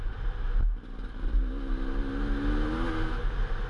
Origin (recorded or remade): recorded